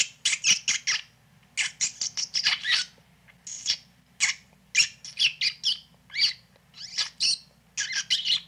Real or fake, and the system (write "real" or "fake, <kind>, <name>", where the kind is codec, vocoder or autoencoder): real